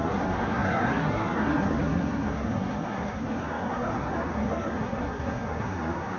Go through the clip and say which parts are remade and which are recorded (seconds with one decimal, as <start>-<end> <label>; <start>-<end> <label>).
0.0-6.2 remade